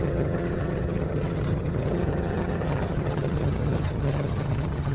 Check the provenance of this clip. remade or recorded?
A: remade